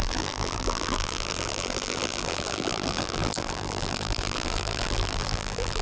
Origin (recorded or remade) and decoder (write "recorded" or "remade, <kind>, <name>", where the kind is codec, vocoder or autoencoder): remade, vocoder, BigVGAN v2